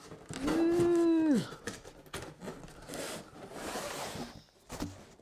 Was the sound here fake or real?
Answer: real